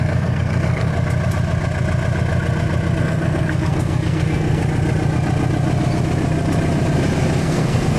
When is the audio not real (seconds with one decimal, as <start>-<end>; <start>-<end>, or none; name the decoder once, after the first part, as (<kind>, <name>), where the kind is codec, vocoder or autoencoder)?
0.0-0.9 (codec, SNAC); 3.0-4.6; 7.4-8.0